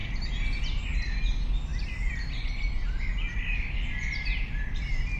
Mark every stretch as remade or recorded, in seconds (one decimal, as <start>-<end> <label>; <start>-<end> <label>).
0.0-5.2 recorded